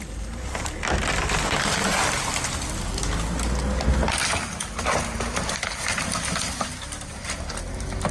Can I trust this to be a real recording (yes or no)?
yes